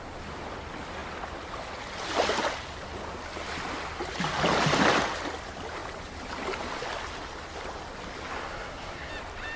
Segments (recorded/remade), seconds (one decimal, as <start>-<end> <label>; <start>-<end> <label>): 0.0-8.5 recorded; 8.5-9.1 remade; 9.1-9.6 recorded